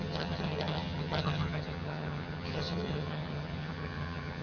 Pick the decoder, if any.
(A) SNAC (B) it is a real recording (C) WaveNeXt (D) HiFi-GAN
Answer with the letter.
D